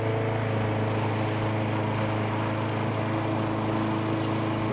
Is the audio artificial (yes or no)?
no